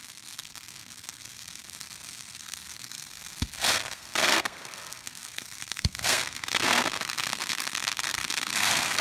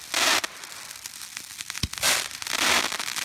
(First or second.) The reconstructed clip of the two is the first